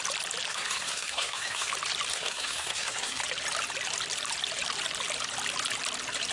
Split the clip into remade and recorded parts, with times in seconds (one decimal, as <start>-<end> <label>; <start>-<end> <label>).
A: 0.0-0.5 recorded; 0.5-1.7 remade; 1.7-2.1 recorded; 2.1-3.2 remade; 3.2-6.3 recorded